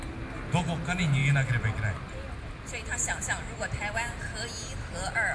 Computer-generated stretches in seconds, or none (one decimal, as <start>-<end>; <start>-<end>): none